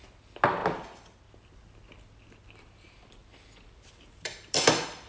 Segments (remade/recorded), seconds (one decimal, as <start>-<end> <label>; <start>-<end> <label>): 0.0-3.2 recorded; 3.2-4.6 remade; 4.6-5.1 recorded